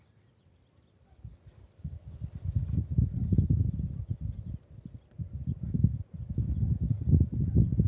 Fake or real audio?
real